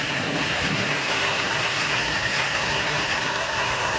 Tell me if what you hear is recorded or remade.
remade